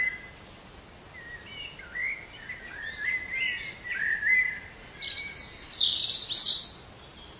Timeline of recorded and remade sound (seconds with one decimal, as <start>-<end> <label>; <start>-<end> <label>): 0.0-7.4 recorded